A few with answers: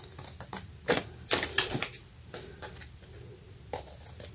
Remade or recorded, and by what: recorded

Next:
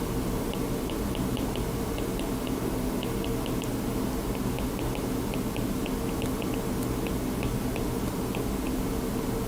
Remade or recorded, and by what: recorded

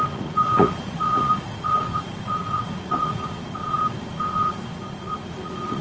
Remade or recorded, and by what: remade, vocoder, Vocos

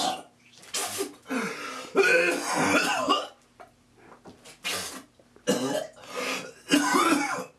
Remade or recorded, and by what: recorded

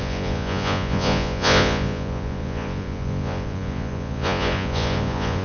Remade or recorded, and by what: remade, vocoder, Vocos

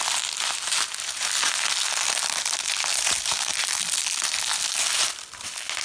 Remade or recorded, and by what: recorded